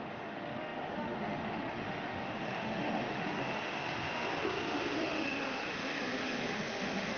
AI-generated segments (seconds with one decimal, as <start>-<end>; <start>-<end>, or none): 0.0-7.2